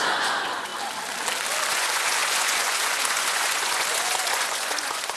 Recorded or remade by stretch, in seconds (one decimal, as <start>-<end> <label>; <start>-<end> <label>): 0.0-0.7 remade; 0.7-1.7 recorded; 1.7-5.2 remade